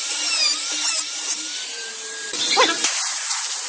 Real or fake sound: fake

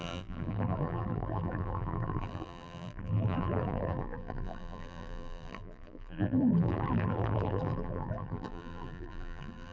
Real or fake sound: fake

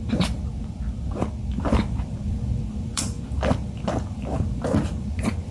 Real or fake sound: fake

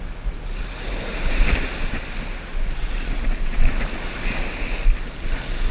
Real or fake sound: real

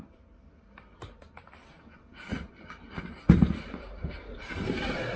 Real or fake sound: fake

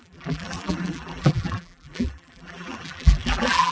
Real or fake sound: fake